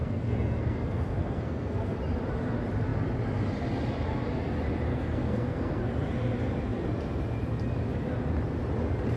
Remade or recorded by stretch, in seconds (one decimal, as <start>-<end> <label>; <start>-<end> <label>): 0.0-2.0 remade; 2.0-4.9 recorded; 4.9-5.8 remade; 5.8-9.2 recorded